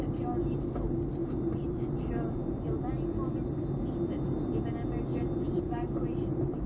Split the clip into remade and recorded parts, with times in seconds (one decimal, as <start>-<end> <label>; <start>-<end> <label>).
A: 0.0-1.2 recorded; 1.2-2.9 remade; 2.9-5.1 recorded; 5.1-6.7 remade